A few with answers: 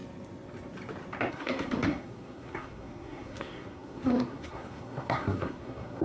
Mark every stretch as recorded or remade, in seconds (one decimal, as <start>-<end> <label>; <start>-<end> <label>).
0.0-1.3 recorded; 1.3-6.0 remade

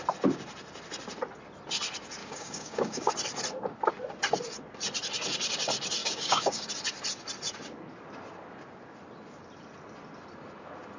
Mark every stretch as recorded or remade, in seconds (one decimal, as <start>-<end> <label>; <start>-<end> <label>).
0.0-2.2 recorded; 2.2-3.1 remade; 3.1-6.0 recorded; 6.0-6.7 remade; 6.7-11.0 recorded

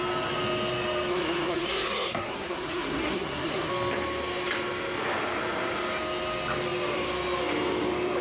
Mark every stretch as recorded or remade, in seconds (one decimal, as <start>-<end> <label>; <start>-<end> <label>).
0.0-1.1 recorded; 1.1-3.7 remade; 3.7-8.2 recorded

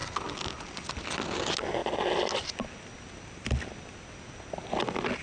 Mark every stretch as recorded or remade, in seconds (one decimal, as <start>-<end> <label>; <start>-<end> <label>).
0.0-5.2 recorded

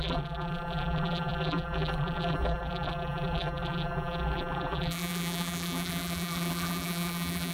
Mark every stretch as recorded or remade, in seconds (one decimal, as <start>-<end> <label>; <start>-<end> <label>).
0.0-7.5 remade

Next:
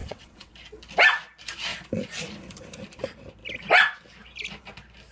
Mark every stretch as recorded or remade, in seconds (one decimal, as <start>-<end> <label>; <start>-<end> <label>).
0.0-0.5 remade; 0.5-5.1 recorded

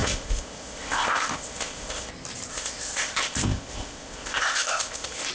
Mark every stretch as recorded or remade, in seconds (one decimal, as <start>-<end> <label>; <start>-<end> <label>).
0.0-2.1 remade; 2.1-2.5 recorded; 2.5-5.3 remade